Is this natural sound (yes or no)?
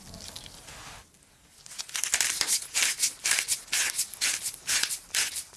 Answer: yes